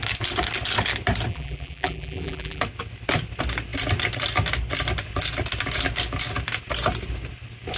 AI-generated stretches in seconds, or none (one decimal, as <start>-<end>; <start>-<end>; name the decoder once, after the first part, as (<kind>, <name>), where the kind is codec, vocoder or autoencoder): 1.3-2.6 (vocoder, BigVGAN v2)